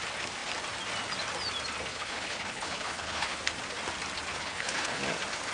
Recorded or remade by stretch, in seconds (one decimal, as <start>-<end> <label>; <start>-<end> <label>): 0.0-1.9 recorded; 1.9-3.4 remade; 3.4-4.3 recorded; 4.3-5.0 remade; 5.0-5.5 recorded